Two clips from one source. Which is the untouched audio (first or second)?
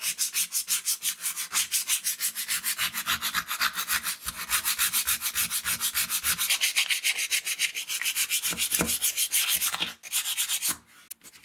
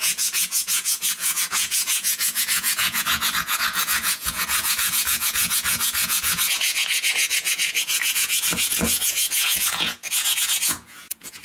first